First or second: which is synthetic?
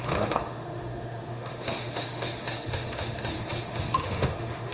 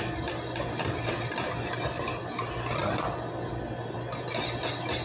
first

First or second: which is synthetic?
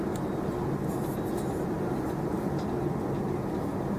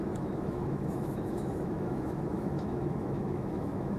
second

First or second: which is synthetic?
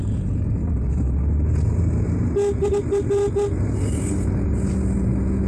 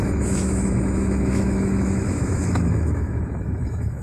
second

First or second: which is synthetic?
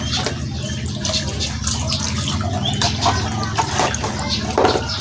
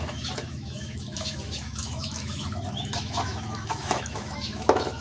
second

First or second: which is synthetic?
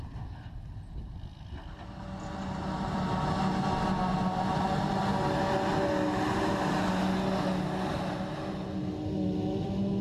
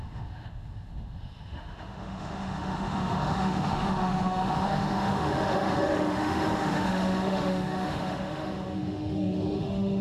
second